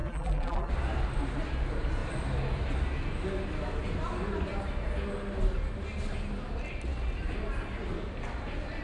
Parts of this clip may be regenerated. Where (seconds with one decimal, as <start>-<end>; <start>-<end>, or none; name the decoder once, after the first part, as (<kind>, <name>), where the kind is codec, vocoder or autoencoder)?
0.0-0.7 (vocoder, BigVGAN v2)